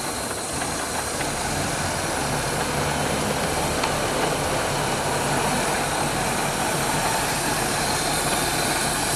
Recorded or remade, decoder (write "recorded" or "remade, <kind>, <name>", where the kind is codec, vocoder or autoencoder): recorded